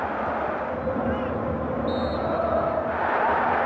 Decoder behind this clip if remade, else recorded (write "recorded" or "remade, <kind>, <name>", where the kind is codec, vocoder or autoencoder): recorded